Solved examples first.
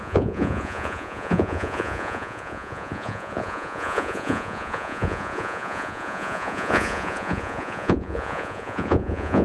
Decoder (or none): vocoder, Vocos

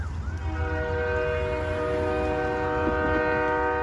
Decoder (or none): none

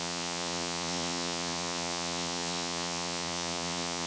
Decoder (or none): vocoder, Vocos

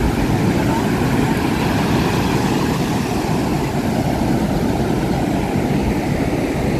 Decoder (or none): none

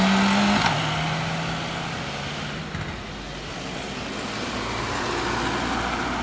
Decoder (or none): none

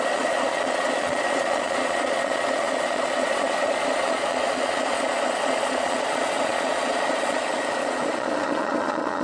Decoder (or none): vocoder, Vocos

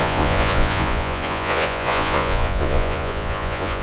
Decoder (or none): vocoder, Vocos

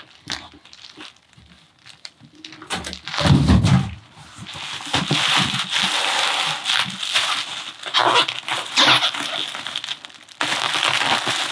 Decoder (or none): none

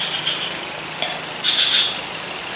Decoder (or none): none